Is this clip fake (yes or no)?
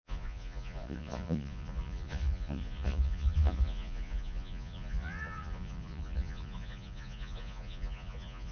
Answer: yes